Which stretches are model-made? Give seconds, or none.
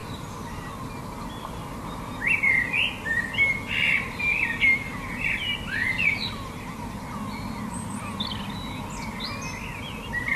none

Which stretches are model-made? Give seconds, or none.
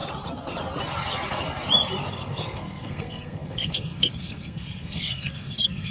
2.1-5.9 (codec, SNAC)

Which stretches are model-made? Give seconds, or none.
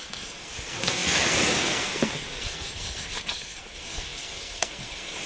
0.0-5.3 (codec, SNAC)